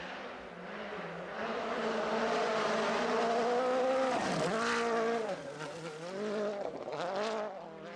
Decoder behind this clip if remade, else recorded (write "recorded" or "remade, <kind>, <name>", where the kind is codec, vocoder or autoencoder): recorded